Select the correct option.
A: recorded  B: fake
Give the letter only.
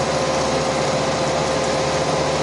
A